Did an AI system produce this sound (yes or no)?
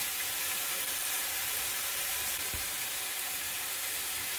yes